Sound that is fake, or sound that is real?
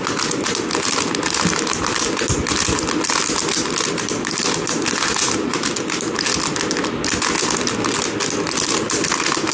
real